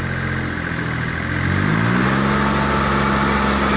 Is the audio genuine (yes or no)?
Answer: yes